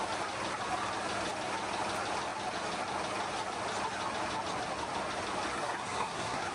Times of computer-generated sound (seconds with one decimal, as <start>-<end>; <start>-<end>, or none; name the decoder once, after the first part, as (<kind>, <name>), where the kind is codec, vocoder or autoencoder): 5.5-6.5 (codec, SNAC)